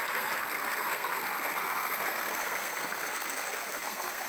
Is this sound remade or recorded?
remade